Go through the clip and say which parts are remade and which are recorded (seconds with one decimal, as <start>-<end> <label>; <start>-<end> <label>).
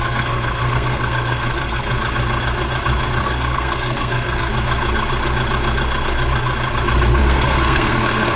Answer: 0.0-1.9 remade; 1.9-3.2 recorded; 3.2-4.5 remade; 4.5-7.2 recorded; 7.2-8.4 remade